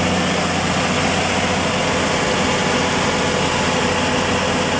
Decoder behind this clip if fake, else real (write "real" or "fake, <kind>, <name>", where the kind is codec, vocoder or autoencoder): real